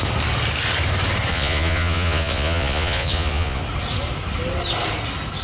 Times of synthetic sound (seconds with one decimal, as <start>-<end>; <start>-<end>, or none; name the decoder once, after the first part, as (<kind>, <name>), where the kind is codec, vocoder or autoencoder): 1.3-3.6 (vocoder, Vocos)

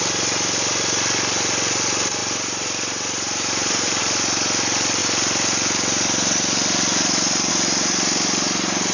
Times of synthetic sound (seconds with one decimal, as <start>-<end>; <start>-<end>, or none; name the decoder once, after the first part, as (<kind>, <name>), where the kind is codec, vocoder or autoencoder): 2.2-4.0 (vocoder, BigVGAN v2)

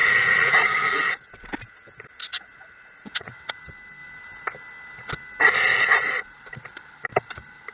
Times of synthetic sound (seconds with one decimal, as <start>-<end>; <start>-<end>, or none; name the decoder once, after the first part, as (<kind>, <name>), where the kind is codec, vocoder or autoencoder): 0.0-1.3 (vocoder, Vocos); 2.3-3.5

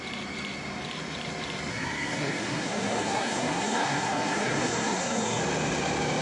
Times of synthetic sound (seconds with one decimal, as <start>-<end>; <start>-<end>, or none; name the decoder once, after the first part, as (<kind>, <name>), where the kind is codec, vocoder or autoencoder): 1.7-5.4 (codec, SNAC)